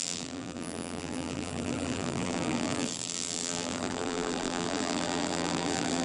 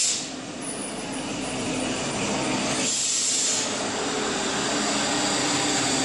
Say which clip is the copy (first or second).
first